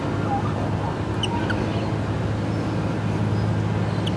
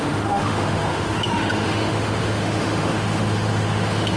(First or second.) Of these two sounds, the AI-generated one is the second